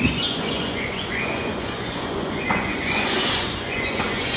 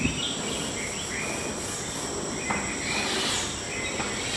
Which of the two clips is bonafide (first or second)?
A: second